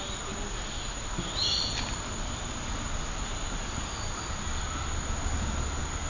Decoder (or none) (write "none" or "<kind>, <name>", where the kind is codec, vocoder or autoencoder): none